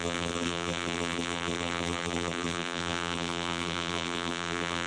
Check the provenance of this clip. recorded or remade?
remade